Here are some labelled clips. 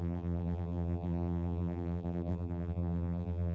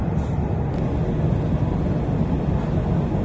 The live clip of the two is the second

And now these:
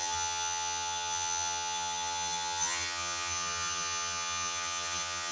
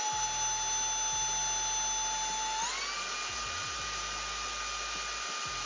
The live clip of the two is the second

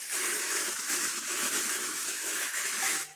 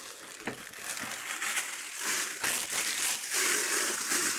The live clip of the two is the second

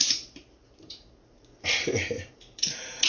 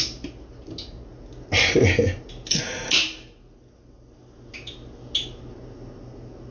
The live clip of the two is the second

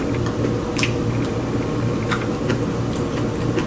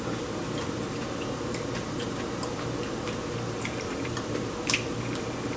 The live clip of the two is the first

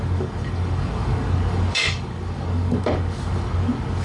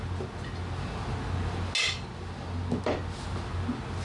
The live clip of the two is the second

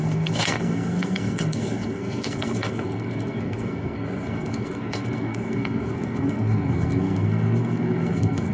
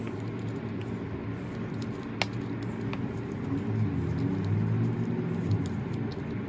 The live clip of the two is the second